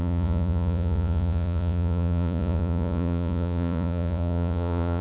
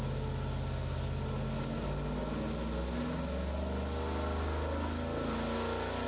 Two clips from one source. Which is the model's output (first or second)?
first